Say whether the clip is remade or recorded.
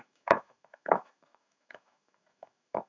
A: remade